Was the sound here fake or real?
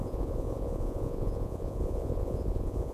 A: fake